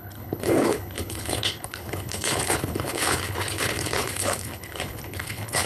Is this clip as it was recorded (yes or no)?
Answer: no